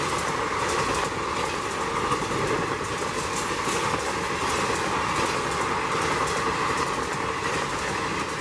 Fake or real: real